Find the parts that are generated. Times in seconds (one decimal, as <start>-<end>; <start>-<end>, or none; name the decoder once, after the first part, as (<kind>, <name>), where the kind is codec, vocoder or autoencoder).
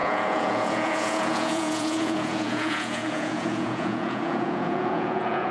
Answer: 0.0-5.5 (vocoder, Vocos)